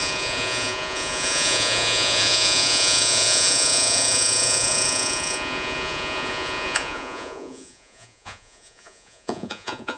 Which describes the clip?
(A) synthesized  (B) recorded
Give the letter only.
A